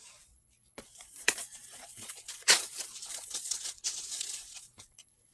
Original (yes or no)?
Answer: no